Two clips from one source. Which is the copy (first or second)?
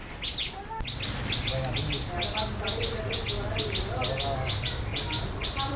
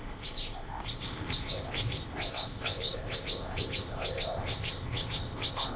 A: second